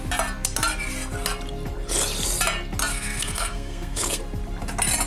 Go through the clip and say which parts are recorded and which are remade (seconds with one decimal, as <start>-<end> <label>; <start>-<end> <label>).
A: 0.0-2.9 recorded; 2.9-4.2 remade; 4.2-5.1 recorded